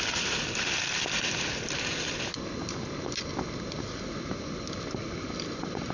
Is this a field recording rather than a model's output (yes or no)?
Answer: yes